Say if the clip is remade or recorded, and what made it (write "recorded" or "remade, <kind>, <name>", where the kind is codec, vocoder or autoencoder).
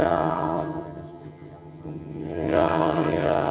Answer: remade, vocoder, HiFi-GAN